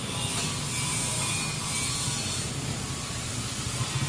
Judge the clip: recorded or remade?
recorded